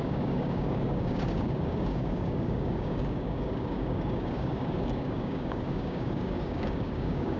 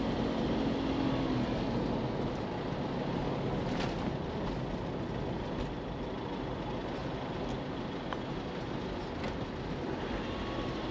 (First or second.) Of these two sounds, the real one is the second